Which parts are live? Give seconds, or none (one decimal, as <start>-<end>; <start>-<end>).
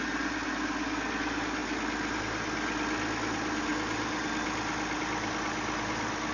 0.0-6.3